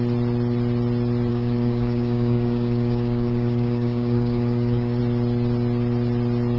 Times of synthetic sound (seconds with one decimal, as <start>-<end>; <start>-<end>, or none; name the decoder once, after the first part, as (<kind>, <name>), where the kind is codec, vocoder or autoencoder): 1.3-5.0 (codec, DAC)